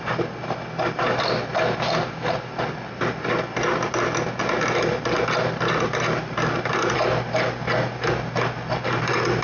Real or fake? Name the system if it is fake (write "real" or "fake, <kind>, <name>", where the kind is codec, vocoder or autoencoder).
real